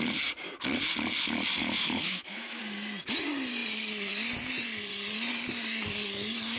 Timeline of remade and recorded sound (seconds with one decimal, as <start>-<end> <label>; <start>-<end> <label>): 0.0-1.6 recorded; 1.6-2.6 remade; 2.6-6.6 recorded